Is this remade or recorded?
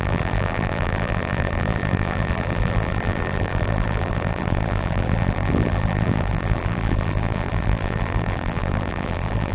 remade